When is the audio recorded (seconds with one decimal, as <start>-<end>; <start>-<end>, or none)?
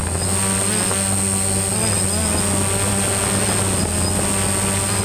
0.0-5.0